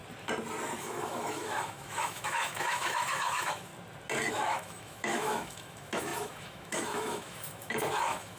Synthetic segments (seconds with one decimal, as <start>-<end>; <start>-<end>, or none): 0.8-3.7; 4.3-8.4